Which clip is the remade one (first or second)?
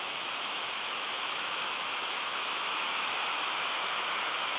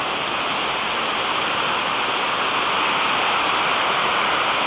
first